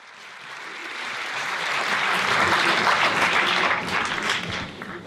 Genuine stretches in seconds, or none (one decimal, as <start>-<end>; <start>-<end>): 0.0-0.8; 1.7-5.1